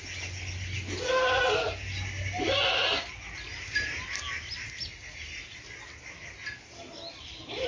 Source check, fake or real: real